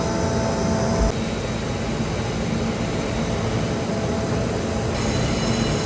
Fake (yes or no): no